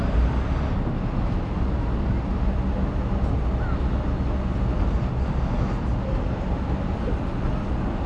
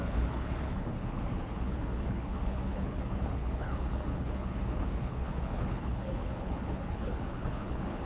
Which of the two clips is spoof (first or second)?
second